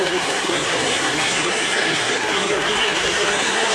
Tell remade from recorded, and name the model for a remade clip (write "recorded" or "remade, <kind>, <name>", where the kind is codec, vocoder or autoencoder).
remade, codec, SNAC